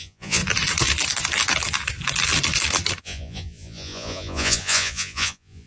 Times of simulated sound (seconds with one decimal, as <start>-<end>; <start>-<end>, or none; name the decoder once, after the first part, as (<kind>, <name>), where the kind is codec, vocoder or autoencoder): 0.0-0.4 (vocoder, Vocos); 3.0-5.7